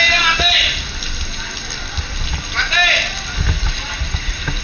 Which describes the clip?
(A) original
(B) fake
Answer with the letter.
A